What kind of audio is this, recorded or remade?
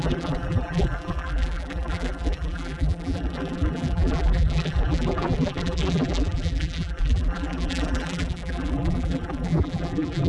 remade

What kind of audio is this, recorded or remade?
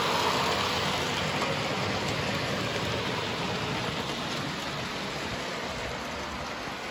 recorded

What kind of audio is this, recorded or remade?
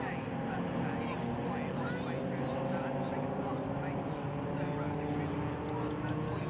recorded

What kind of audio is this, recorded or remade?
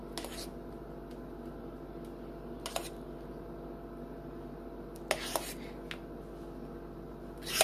recorded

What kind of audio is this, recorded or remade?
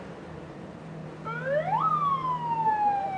recorded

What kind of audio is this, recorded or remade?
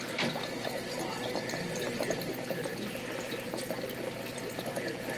remade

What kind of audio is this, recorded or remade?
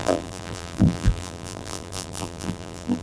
remade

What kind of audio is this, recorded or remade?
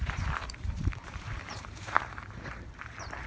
remade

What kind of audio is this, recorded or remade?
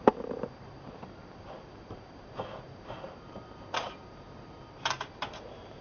remade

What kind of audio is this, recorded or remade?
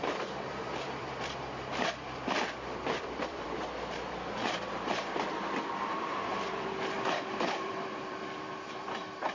remade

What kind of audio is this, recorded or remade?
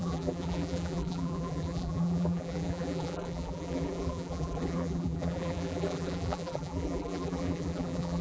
remade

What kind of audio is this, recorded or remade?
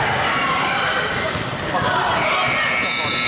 recorded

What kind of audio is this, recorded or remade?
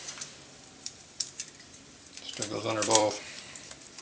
remade